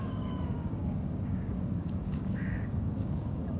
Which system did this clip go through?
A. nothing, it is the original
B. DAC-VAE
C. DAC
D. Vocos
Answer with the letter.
C